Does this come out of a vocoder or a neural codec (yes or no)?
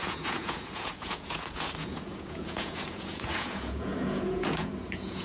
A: yes